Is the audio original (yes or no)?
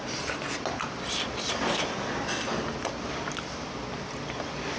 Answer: yes